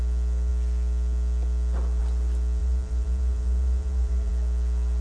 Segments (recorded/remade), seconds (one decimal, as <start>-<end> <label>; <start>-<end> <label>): 0.0-2.6 recorded; 2.6-4.3 remade; 4.3-5.0 recorded